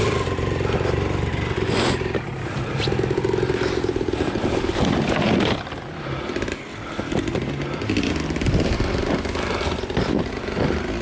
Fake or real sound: real